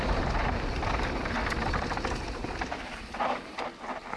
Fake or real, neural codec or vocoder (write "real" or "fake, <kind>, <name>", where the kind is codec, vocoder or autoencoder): real